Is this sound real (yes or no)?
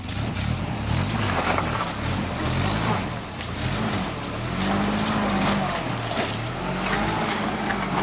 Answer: yes